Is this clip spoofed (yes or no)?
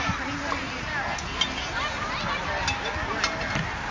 no